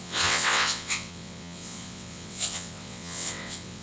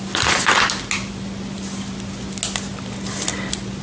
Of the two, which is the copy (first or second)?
first